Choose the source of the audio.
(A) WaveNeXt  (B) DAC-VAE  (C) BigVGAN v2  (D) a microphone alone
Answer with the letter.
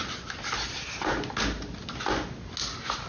D